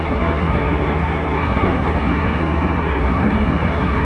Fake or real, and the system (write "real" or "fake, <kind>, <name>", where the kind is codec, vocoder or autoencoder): fake, codec, SNAC